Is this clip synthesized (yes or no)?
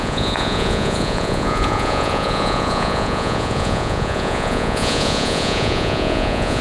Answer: yes